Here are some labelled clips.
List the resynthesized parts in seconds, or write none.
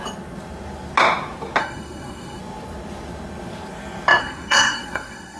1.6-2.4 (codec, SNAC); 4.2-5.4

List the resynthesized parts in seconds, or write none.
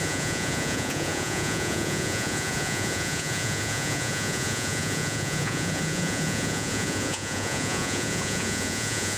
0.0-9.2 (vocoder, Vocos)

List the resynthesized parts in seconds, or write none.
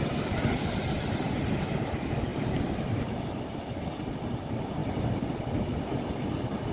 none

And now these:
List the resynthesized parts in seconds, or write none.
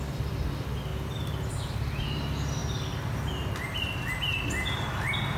none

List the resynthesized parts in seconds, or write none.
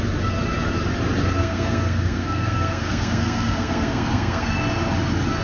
1.4-4.6 (codec, SNAC)